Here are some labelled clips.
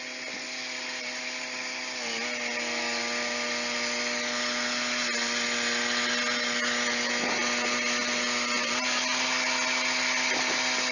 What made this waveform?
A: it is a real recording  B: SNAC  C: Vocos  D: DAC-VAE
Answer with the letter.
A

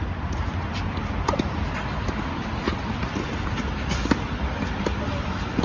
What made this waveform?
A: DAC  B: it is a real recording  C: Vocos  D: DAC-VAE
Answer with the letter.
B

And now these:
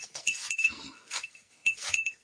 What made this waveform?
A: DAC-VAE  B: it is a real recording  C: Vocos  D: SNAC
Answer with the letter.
D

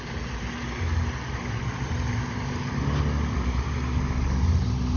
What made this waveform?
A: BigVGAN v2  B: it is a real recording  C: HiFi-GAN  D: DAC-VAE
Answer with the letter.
B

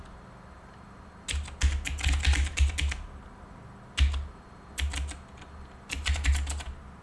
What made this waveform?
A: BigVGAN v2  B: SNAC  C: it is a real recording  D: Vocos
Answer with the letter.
C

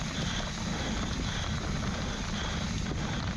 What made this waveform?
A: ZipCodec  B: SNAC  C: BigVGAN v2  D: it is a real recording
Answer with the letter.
D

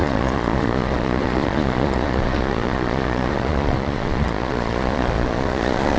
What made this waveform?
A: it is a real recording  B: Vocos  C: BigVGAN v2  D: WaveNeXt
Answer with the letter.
B